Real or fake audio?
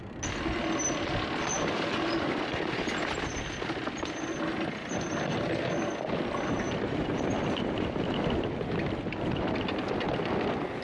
real